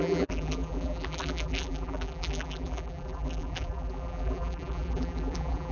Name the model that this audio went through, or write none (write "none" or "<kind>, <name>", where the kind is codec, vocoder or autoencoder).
vocoder, BigVGAN v2